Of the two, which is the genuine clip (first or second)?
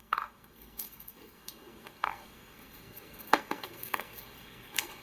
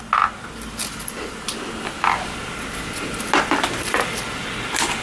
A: second